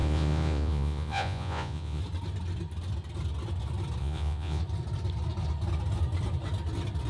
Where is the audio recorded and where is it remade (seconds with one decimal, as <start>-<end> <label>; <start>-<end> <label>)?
0.0-2.0 remade; 2.0-4.0 recorded; 4.0-4.6 remade; 4.6-7.1 recorded